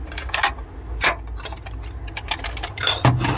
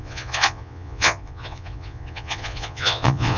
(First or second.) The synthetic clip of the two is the second